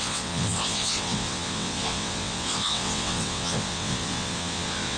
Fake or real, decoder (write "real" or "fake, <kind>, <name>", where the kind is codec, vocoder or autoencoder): fake, vocoder, WaveNeXt